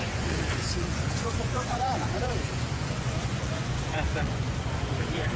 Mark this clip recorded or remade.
remade